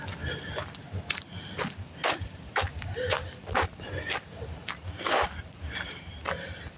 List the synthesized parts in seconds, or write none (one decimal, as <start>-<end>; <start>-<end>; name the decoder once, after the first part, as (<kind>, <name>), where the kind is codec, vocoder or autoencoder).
0.8-1.3 (vocoder, BigVGAN v2)